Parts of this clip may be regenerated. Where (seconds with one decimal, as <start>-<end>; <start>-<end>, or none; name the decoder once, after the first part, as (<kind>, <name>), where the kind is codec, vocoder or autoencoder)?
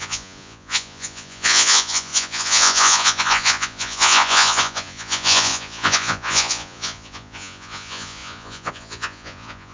0.0-9.7 (vocoder, Vocos)